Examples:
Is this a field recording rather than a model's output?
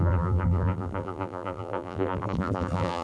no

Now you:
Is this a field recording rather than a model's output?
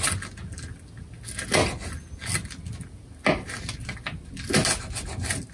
yes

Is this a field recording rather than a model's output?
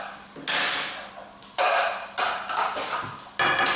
yes